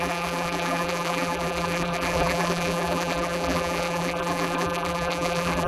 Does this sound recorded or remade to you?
remade